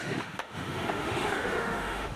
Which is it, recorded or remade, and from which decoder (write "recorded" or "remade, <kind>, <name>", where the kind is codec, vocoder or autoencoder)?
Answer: remade, autoencoder, DAC-VAE